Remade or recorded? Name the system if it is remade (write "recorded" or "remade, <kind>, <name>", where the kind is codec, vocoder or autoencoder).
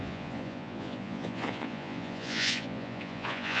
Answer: remade, vocoder, Vocos